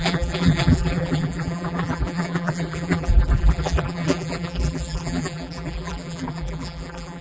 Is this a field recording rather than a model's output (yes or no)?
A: no